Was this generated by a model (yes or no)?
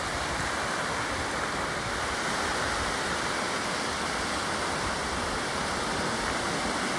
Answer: no